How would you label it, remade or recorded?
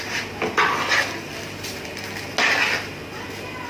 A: recorded